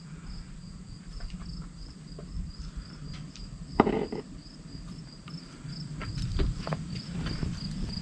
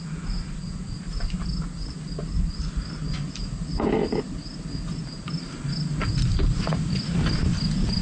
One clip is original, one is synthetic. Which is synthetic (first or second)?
first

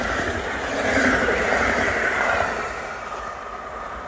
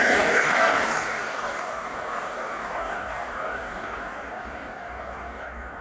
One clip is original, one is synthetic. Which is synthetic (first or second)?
second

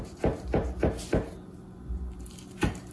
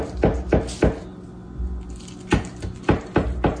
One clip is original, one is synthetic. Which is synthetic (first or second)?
first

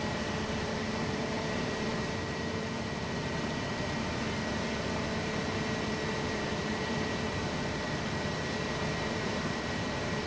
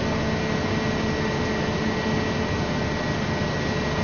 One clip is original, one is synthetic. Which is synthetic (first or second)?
first